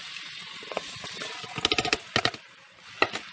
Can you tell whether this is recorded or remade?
recorded